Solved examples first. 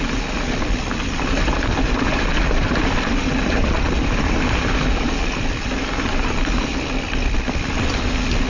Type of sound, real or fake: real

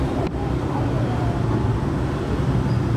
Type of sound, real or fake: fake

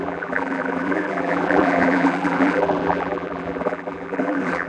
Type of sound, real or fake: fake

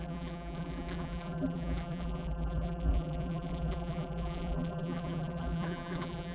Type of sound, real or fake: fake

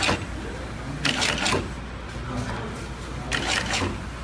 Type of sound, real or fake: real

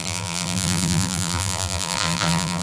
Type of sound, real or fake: fake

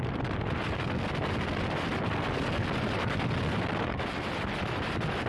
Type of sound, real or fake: fake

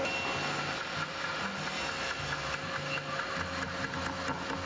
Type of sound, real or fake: real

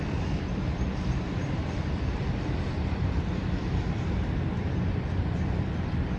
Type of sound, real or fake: fake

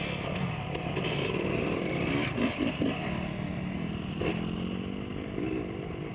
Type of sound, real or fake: real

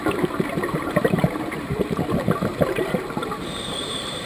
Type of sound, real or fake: fake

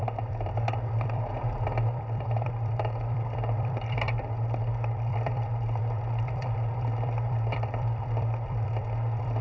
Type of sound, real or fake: fake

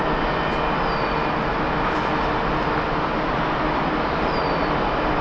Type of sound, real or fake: real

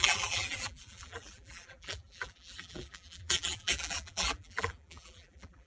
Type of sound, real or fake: fake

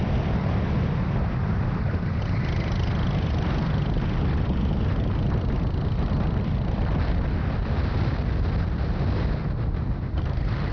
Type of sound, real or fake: real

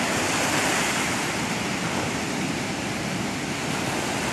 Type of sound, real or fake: fake